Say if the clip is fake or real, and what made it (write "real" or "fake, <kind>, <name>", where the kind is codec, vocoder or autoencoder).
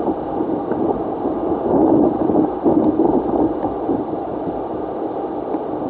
real